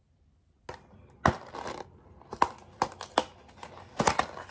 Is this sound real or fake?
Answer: real